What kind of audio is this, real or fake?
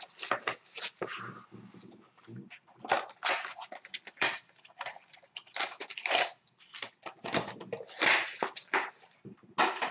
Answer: real